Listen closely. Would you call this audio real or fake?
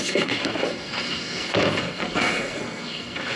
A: fake